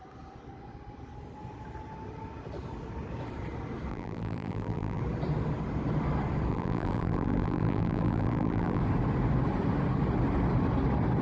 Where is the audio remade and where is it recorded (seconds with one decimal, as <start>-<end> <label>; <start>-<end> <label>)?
0.0-3.9 recorded; 3.9-5.0 remade; 5.0-6.5 recorded; 6.5-8.8 remade; 8.8-11.2 recorded